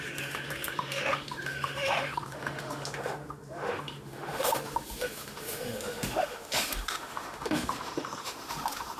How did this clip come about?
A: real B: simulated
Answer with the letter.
B